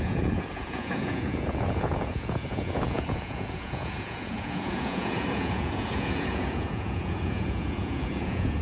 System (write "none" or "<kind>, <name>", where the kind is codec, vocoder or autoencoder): vocoder, Vocos